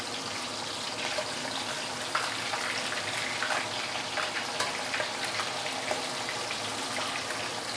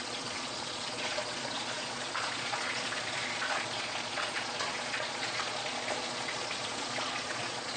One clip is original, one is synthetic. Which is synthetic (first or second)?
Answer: second